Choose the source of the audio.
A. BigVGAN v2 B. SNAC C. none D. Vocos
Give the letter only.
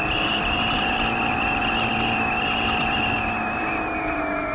A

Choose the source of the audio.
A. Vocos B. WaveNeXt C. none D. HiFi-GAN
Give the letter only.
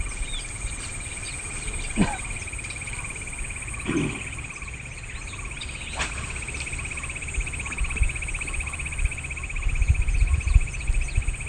C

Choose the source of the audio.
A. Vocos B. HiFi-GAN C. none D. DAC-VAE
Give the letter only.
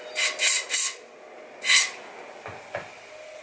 C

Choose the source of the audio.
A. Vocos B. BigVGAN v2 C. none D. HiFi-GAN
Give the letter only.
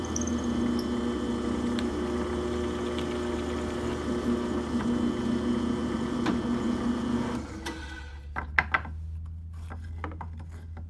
C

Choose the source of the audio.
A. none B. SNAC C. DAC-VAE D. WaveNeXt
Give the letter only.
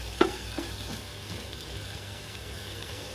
B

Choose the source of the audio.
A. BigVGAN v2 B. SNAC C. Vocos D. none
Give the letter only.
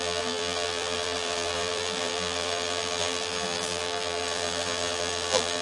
A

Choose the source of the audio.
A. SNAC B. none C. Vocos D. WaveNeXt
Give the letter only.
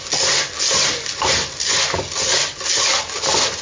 B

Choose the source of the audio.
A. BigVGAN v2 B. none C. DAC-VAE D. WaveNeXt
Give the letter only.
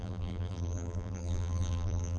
A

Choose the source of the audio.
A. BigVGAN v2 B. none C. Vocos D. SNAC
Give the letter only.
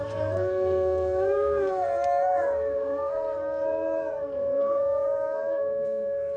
D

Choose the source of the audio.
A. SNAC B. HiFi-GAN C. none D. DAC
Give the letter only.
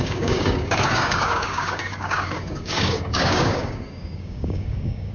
D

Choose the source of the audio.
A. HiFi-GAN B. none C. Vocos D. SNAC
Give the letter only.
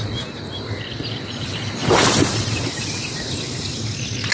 B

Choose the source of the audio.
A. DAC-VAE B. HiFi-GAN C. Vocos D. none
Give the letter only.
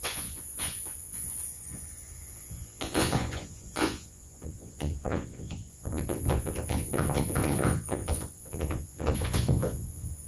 C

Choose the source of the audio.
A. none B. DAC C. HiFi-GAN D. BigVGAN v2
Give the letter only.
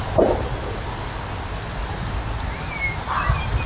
A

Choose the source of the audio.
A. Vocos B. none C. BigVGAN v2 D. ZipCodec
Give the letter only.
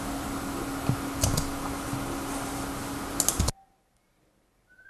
B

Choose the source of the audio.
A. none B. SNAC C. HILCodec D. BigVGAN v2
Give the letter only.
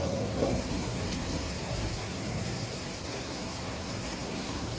B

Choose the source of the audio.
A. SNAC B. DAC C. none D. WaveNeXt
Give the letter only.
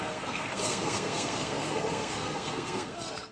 A